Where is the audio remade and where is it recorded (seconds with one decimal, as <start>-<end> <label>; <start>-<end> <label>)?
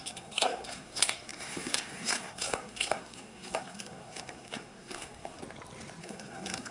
0.0-5.4 remade; 5.4-6.0 recorded; 6.0-6.7 remade